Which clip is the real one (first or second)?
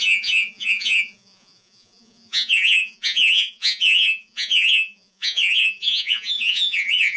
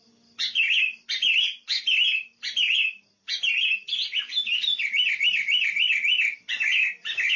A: second